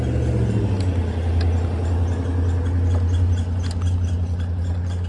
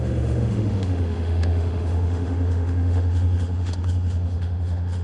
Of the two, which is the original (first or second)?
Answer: first